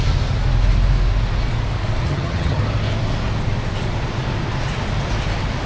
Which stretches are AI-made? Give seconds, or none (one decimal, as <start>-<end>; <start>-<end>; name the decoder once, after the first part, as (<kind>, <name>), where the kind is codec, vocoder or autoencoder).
2.0-2.6 (vocoder, HiFi-GAN)